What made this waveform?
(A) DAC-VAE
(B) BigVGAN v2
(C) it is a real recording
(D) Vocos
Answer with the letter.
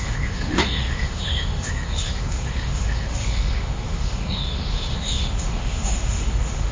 A